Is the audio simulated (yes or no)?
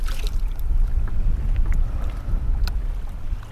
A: no